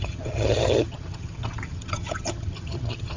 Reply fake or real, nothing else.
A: fake